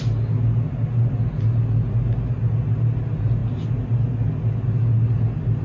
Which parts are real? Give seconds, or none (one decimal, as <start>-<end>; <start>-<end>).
0.0-5.6